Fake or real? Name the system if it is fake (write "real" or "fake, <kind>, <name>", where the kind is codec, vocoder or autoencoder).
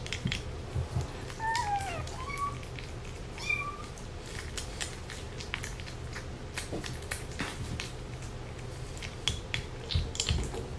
real